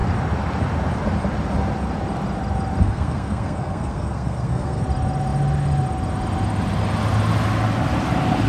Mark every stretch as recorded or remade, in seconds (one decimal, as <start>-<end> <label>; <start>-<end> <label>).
0.0-2.8 recorded; 2.8-4.8 remade; 4.8-8.5 recorded